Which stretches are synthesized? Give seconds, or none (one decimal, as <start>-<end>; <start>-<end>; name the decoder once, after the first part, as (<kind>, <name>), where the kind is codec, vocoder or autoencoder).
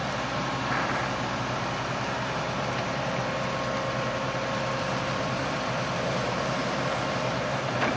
0.0-3.2 (vocoder, BigVGAN v2); 5.0-8.0